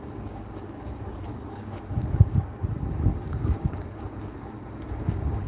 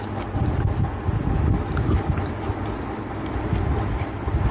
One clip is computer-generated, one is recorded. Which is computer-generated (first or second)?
first